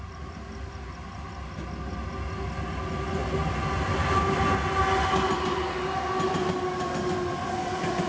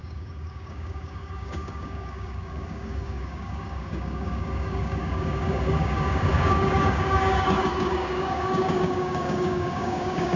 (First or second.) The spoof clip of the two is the second